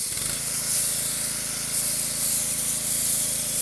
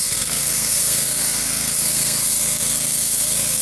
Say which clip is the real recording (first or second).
first